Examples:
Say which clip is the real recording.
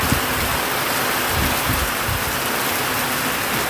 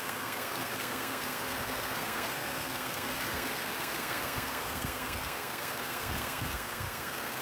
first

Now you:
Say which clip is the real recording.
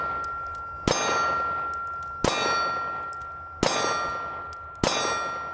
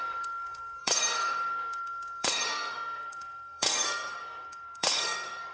first